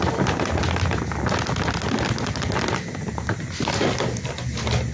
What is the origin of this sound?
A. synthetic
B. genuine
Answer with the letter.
B